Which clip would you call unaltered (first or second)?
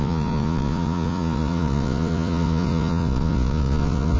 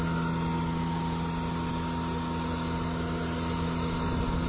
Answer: second